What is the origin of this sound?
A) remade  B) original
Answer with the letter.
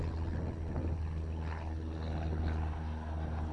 B